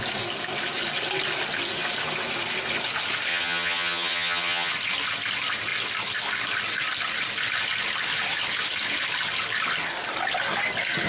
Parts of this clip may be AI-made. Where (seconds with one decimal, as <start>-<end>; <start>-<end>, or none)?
3.3-4.7